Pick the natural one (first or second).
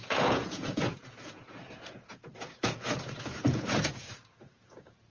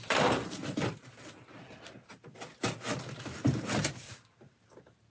second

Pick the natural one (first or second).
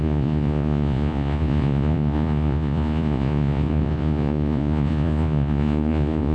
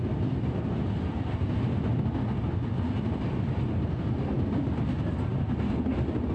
second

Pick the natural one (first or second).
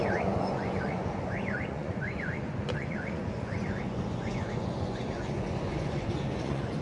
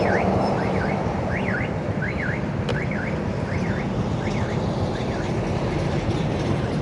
second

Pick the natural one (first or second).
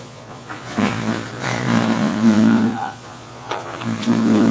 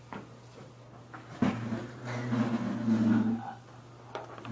second